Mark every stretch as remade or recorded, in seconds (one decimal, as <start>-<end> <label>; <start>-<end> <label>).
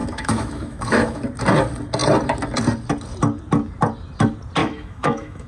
0.0-1.2 remade; 1.2-4.6 recorded; 4.6-5.5 remade